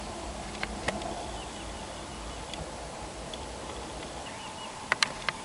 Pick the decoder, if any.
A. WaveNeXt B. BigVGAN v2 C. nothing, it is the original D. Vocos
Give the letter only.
B